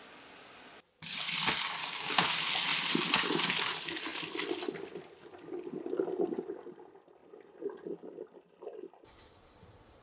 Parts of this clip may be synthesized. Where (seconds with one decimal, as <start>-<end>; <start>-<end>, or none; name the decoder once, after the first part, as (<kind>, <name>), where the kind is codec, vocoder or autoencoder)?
1.8-2.3 (codec, DAC)